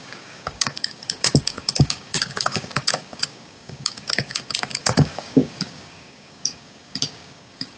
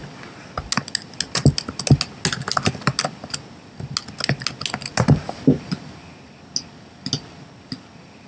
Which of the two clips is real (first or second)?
second